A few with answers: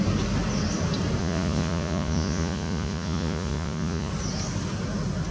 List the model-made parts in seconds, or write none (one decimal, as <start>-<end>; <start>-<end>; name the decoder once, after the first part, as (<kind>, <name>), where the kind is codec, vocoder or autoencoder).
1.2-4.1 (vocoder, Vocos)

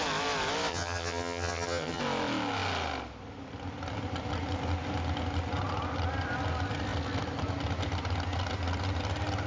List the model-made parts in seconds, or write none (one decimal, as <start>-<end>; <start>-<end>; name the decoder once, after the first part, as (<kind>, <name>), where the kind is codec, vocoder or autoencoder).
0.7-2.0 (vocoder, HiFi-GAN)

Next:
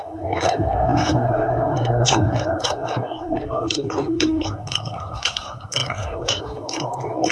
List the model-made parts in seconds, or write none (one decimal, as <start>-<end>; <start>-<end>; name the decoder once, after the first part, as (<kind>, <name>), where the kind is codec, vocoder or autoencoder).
0.0-7.3 (codec, SNAC)

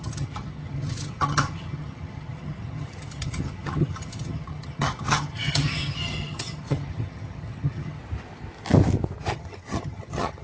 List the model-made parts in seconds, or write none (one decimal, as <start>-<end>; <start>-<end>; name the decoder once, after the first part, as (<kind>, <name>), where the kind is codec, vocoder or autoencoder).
0.0-8.0 (vocoder, HiFi-GAN); 9.3-10.4